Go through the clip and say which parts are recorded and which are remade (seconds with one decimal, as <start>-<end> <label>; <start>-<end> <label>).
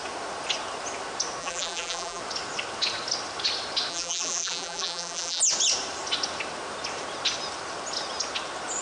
0.0-1.4 recorded; 1.4-2.2 remade; 2.2-3.9 recorded; 3.9-5.4 remade; 5.4-8.8 recorded